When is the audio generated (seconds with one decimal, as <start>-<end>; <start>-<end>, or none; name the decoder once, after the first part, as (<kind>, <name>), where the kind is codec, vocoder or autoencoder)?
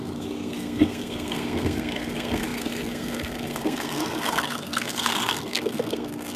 0.0-6.4 (codec, SNAC)